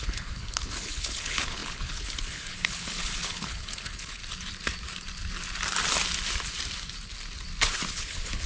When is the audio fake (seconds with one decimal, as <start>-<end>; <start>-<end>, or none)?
0.0-4.2; 7.9-8.5